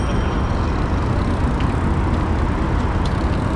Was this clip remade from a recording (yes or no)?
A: no